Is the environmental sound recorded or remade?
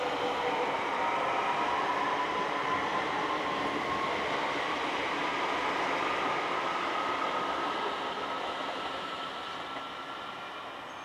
recorded